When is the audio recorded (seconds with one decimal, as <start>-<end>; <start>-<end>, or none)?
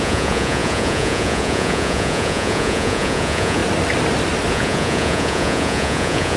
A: 3.6-4.5